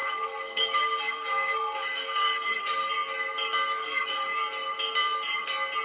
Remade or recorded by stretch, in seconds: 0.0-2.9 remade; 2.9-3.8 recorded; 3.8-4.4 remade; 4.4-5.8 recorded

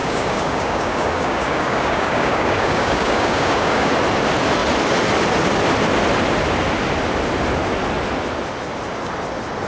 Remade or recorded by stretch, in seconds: 0.0-3.9 remade; 3.9-9.7 recorded

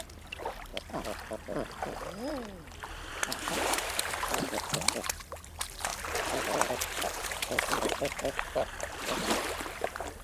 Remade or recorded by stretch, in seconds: 0.0-3.1 recorded; 3.1-4.5 remade; 4.5-5.9 recorded; 5.9-9.3 remade; 9.3-10.2 recorded

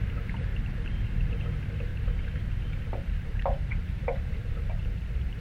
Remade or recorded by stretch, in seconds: 0.0-0.5 recorded; 0.5-1.4 remade; 1.4-1.9 recorded; 1.9-5.4 remade

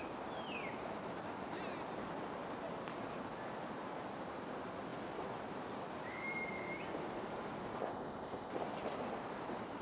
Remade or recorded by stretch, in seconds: 0.0-7.9 recorded; 7.9-8.5 remade; 8.5-9.8 recorded

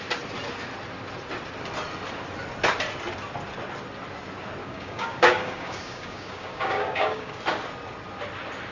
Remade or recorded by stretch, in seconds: 0.0-4.6 recorded; 4.6-7.4 remade; 7.4-8.7 recorded